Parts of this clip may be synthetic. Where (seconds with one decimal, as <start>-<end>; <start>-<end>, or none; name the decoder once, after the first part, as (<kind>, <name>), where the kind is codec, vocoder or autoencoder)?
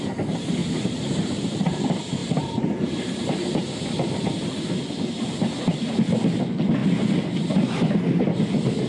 0.6-1.8 (vocoder, BigVGAN v2); 2.2-5.3